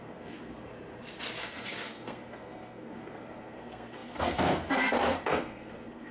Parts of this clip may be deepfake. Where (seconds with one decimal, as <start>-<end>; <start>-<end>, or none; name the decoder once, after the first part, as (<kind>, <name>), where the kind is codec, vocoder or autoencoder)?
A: 0.0-0.7 (codec, SNAC); 1.4-6.1